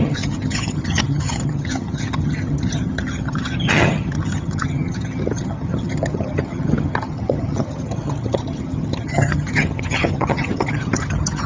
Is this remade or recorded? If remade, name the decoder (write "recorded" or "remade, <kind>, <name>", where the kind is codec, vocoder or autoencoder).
remade, vocoder, HiFi-GAN